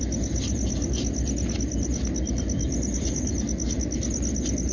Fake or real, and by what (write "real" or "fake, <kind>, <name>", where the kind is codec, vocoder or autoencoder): real